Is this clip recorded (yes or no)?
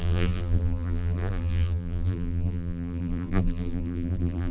no